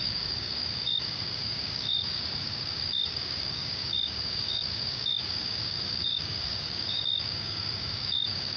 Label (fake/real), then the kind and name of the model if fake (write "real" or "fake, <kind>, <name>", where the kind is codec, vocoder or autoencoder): fake, codec, DAC